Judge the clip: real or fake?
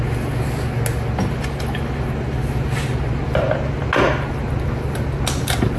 real